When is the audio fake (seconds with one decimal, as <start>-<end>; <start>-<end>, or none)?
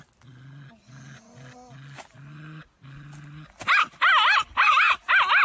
none